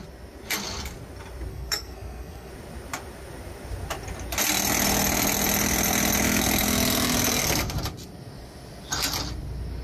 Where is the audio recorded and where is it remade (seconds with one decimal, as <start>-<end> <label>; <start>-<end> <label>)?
0.0-1.5 recorded; 1.5-2.5 remade; 2.5-9.8 recorded